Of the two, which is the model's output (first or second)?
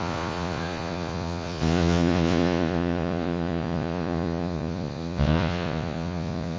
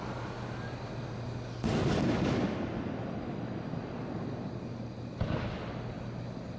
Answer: first